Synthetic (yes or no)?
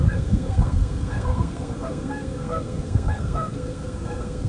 yes